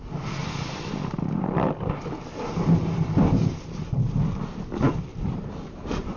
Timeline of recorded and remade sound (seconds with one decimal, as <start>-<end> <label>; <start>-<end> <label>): 0.0-0.4 recorded; 0.4-3.9 remade; 3.9-5.1 recorded; 5.1-6.2 remade